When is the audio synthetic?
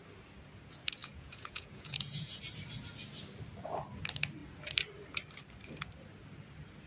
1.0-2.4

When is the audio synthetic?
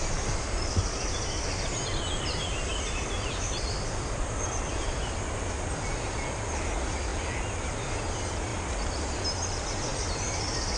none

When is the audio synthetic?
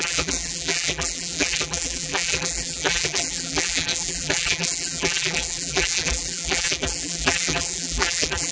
0.0-8.5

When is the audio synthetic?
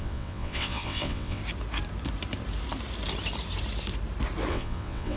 0.0-1.4; 4.5-5.2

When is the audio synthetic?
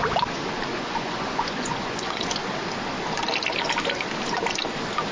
0.7-2.4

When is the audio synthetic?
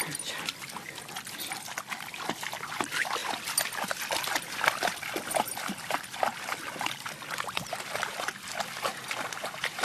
none